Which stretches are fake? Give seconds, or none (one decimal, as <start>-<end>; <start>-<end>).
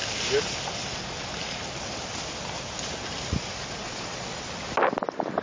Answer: 3.8-4.4